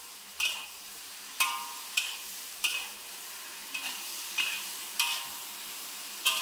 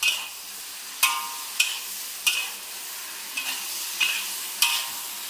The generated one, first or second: first